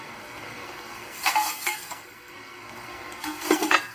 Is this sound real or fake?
fake